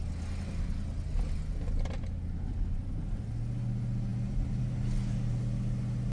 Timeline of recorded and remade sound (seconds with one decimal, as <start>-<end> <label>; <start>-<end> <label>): 0.0-6.1 recorded